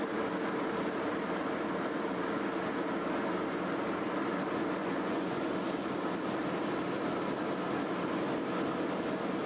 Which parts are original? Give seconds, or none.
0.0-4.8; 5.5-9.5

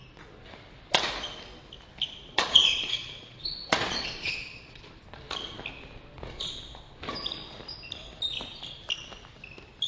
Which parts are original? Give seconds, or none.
0.0-2.3; 5.0-9.9

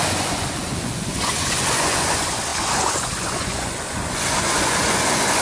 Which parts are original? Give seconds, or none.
none

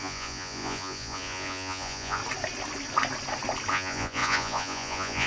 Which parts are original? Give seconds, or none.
2.2-3.7

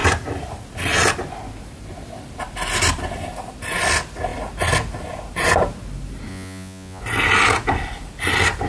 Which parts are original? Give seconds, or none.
0.0-6.3; 7.0-8.7